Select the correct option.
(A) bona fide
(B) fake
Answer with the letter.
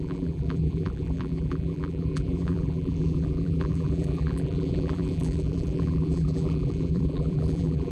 B